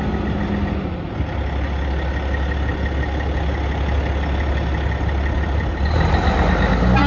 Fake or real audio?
real